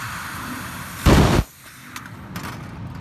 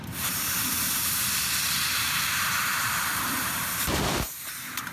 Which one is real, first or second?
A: first